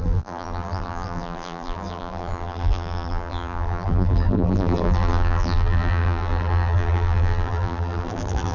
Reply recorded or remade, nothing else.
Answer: remade